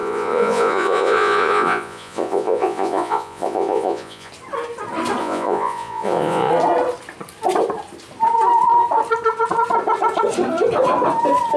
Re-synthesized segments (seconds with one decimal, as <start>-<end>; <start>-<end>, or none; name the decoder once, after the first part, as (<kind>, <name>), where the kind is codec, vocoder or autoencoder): 0.0-4.3 (vocoder, Vocos); 5.2-6.5